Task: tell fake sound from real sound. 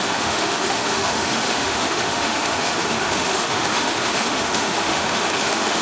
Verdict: fake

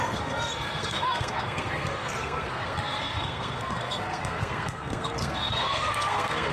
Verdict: fake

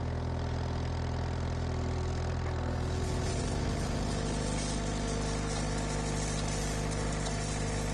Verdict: real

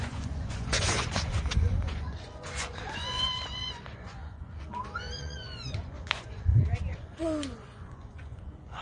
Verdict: fake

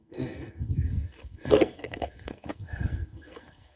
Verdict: fake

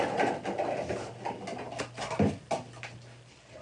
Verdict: real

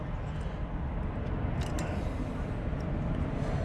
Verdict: real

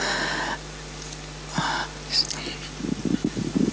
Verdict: fake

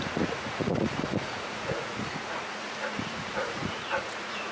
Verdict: fake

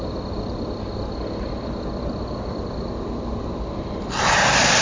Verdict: real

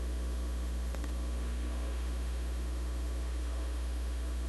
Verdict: fake